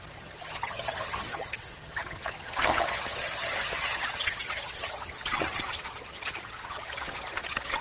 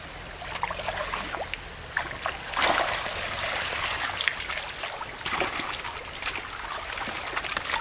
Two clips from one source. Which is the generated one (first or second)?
first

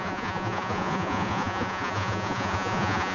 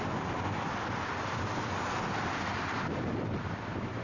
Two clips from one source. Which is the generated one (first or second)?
first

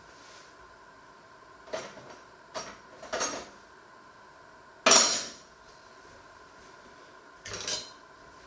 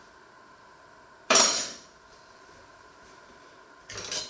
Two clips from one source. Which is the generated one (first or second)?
second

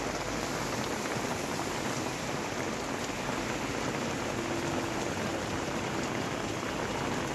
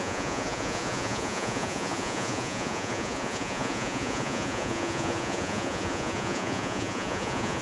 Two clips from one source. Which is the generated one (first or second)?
second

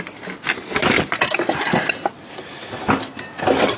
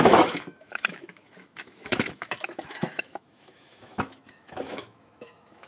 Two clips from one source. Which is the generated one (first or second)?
second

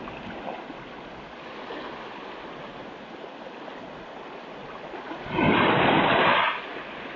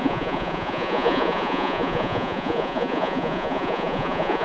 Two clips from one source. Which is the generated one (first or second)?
second